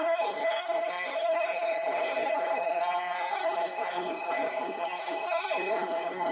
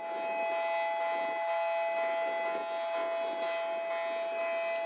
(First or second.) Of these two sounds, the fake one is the first